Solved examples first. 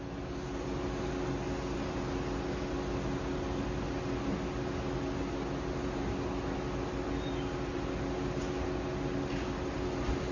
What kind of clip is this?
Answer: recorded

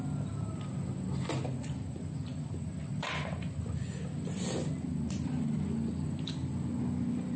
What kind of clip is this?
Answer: recorded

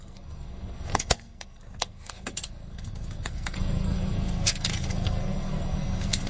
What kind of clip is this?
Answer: remade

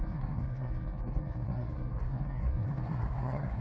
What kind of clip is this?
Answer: remade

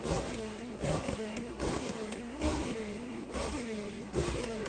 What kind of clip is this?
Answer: remade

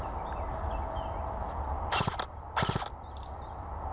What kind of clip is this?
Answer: recorded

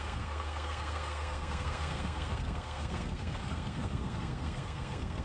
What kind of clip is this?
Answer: remade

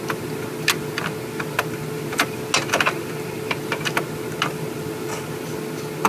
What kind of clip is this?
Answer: recorded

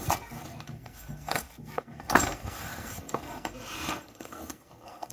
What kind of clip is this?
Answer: remade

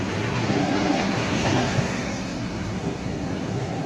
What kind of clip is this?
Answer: remade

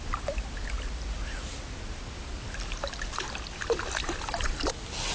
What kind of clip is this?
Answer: recorded